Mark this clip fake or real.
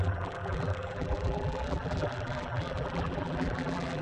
fake